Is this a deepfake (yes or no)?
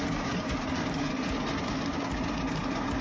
no